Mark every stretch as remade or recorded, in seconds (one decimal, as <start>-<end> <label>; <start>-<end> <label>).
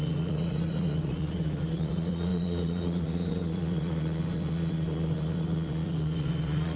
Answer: 0.0-6.8 remade